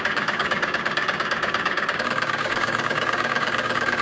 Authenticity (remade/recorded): remade